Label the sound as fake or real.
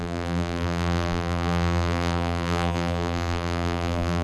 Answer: fake